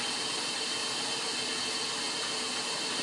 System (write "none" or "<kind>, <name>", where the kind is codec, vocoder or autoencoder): none